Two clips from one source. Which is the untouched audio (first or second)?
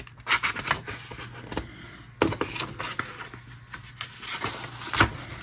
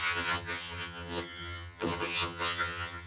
first